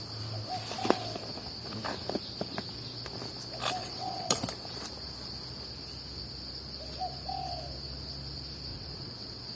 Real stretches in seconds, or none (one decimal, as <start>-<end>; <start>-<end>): 0.0-3.8; 4.4-8.7